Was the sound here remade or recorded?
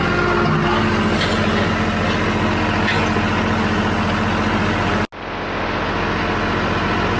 recorded